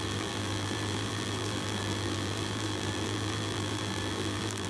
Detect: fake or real fake